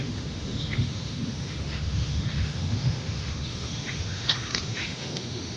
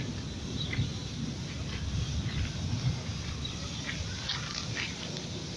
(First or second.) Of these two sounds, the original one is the second